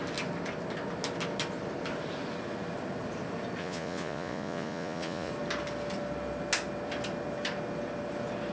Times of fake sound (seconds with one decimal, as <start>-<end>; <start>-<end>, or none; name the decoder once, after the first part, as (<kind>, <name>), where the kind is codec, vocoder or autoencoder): 3.6-5.3 (vocoder, Vocos)